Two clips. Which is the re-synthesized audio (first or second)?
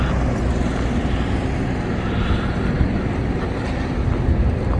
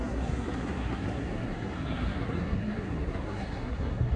second